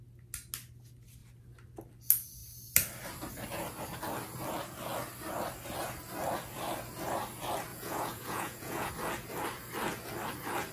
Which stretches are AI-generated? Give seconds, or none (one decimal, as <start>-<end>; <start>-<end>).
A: 7.7-8.9